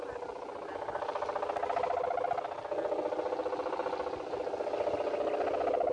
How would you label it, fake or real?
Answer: real